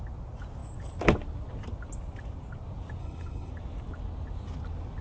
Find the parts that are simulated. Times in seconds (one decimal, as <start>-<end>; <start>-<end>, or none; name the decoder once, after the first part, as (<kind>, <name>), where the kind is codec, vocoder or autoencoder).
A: 3.0-3.5 (codec, HILCodec)